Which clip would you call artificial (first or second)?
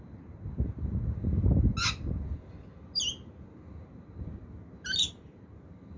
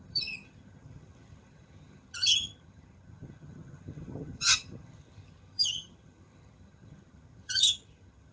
second